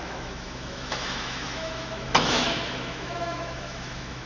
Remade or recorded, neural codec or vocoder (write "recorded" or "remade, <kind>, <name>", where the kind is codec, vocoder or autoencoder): remade, autoencoder, DAC-VAE